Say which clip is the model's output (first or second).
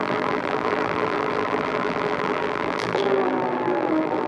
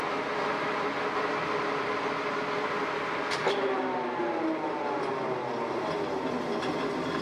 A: first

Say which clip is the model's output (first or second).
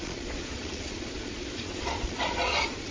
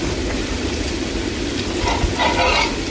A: first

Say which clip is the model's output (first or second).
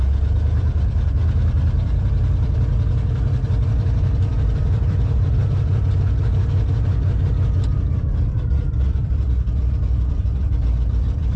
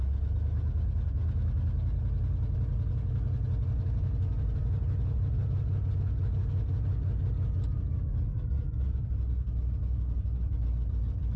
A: first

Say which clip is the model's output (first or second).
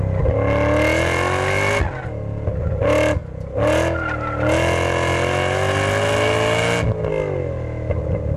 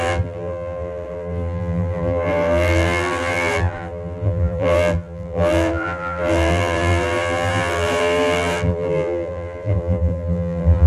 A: second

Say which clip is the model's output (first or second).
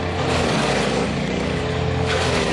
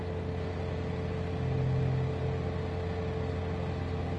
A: first